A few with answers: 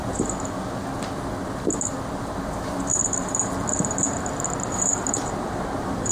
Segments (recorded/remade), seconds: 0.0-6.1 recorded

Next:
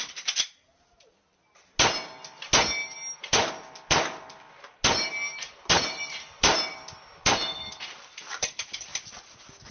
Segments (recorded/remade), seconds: 0.0-1.3 remade; 1.3-5.7 recorded; 5.7-8.9 remade; 8.9-9.7 recorded